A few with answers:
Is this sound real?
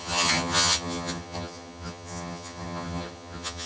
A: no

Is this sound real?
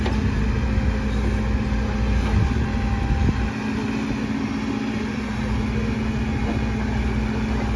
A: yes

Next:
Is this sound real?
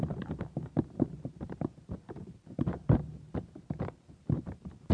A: no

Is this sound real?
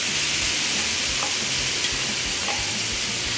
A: yes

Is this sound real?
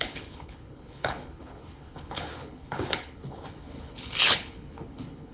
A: no